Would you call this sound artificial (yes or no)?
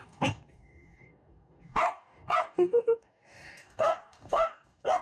yes